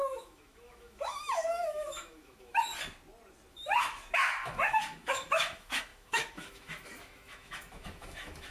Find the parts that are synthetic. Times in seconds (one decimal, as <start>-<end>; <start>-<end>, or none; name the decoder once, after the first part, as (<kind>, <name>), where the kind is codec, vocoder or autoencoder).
0.0-2.7 (autoencoder, DAC-VAE); 3.5-8.5